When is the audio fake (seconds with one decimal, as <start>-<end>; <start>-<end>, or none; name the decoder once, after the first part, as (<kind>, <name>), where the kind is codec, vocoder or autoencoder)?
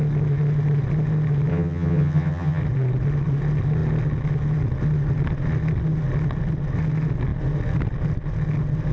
1.5-2.6 (vocoder, HiFi-GAN)